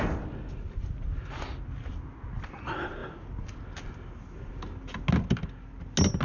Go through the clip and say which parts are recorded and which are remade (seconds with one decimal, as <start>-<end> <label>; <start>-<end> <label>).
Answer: 0.0-6.2 recorded